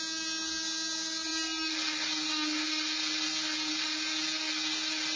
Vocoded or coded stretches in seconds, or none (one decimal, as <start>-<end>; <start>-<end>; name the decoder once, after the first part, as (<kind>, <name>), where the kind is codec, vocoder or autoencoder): none